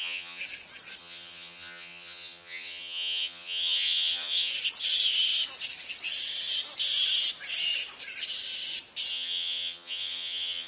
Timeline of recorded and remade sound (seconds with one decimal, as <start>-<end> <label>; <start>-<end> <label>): 0.0-0.4 remade; 0.4-1.0 recorded; 1.0-4.5 remade; 4.5-9.1 recorded; 9.1-10.7 remade